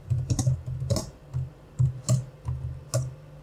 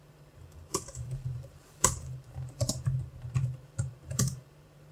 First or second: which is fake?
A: second